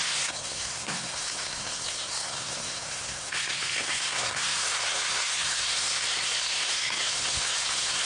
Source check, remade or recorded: remade